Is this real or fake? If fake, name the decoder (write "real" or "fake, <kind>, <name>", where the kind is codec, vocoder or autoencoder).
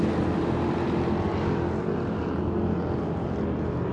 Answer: real